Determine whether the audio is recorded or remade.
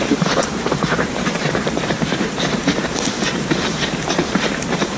remade